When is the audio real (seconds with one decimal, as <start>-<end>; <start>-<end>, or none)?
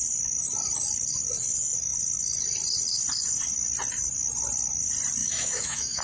0.0-5.2